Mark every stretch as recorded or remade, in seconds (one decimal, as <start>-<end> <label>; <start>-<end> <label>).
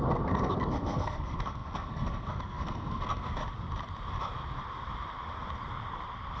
0.0-3.4 remade; 3.4-6.4 recorded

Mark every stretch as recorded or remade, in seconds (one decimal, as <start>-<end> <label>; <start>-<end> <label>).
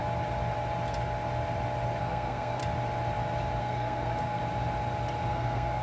0.0-2.0 recorded; 2.0-2.6 remade; 2.6-3.6 recorded; 3.6-4.4 remade; 4.4-5.3 recorded; 5.3-5.8 remade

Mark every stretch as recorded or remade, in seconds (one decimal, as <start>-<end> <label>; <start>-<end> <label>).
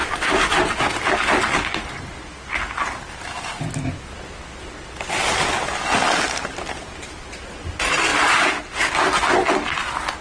0.0-10.2 recorded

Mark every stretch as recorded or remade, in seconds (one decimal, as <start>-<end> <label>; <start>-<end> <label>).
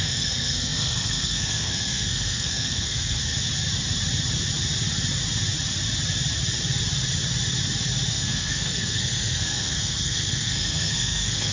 0.0-3.2 remade; 3.2-8.1 recorded; 8.1-11.5 remade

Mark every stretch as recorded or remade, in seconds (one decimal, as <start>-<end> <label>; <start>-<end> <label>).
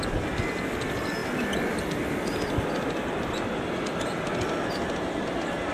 0.0-5.7 recorded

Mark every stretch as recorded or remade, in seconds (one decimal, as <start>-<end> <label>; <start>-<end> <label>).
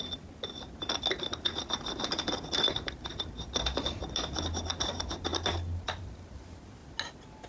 0.0-7.5 recorded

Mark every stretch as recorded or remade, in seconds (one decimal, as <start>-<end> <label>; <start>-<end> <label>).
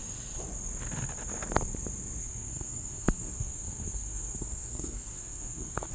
0.0-2.2 recorded; 2.2-5.9 remade